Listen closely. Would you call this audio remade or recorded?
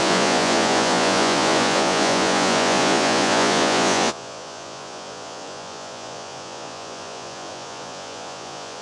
remade